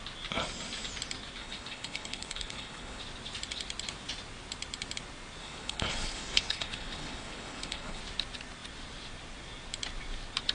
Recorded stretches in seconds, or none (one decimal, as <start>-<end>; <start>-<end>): 0.0-1.4; 3.0-5.4; 8.0-10.5